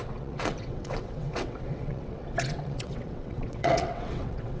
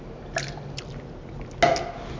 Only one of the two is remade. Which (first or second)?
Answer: first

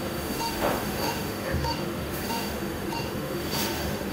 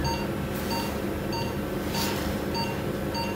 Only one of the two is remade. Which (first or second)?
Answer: first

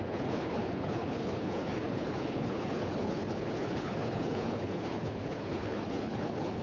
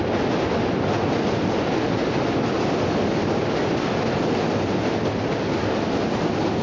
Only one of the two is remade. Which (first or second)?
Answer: first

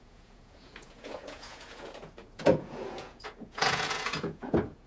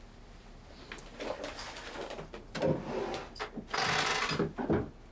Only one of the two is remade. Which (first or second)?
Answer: first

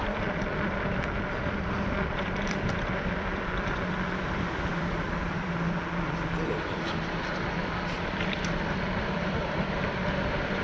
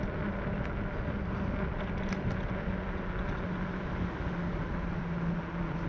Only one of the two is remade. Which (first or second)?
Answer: first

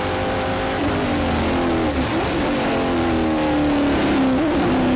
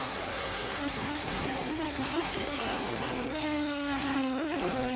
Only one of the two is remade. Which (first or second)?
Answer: second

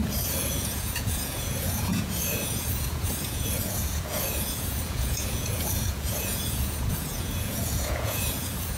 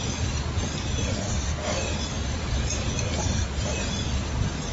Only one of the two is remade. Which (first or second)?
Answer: first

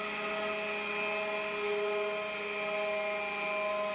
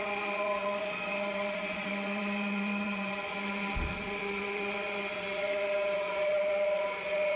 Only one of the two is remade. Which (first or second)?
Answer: second